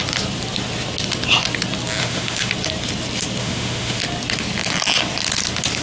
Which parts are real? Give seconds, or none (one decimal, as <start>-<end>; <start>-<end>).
0.0-2.0; 2.5-3.4; 4.0-5.8